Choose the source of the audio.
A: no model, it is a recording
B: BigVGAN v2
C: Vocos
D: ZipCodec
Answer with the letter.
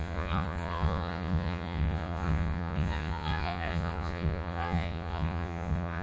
C